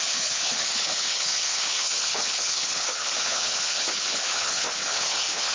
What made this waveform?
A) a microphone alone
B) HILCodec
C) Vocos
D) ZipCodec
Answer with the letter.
B